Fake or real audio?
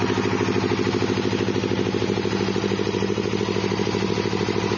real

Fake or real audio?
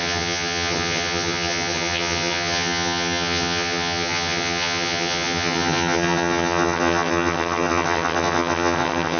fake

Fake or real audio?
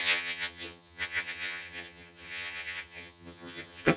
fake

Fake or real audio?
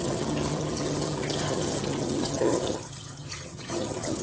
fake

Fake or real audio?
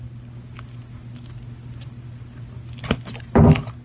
real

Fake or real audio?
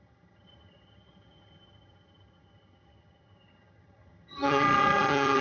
fake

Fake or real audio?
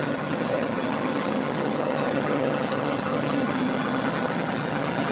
fake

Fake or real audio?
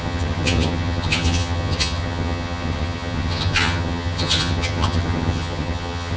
fake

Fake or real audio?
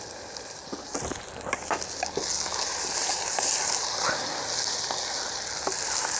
real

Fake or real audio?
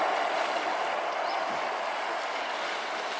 real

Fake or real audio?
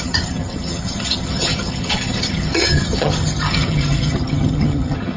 fake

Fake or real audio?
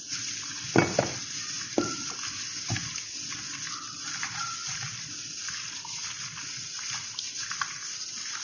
real